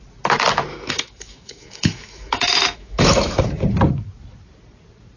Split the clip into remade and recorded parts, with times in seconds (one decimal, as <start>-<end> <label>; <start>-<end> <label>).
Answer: 0.0-0.7 recorded; 0.7-3.4 remade; 3.4-5.2 recorded